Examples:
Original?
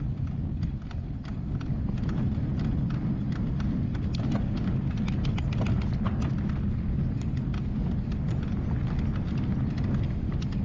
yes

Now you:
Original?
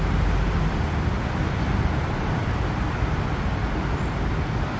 yes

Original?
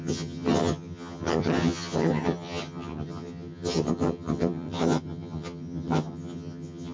no